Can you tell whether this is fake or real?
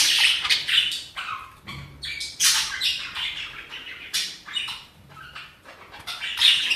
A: real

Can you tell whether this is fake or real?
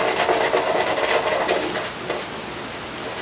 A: real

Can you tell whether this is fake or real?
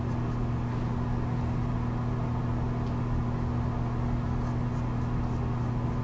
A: real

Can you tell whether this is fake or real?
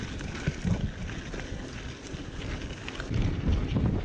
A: real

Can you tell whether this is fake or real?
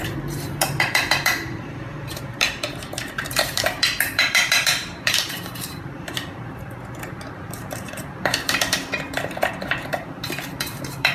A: fake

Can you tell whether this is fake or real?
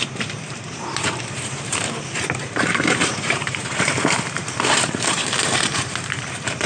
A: fake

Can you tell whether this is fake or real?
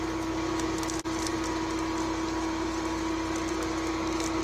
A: real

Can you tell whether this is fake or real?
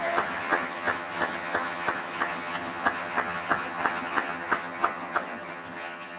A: fake